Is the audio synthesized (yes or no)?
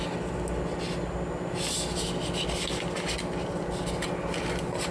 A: no